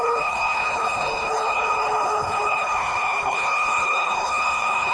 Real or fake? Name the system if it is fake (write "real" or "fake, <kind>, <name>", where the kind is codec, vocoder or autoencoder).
fake, codec, HILCodec